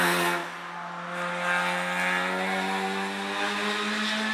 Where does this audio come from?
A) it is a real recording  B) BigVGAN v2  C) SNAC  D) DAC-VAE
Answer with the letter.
A